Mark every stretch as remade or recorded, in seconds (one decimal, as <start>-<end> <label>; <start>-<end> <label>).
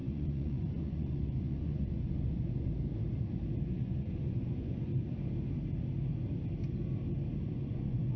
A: 0.0-2.7 remade; 2.7-3.6 recorded; 3.6-4.9 remade; 4.9-7.5 recorded; 7.5-8.2 remade